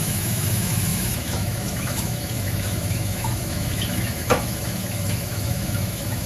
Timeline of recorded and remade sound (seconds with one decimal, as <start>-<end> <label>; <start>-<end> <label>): 0.0-6.3 remade